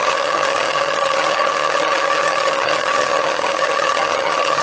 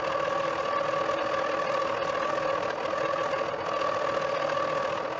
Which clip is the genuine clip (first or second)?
second